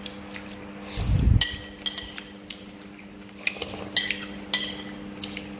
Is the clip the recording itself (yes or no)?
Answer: yes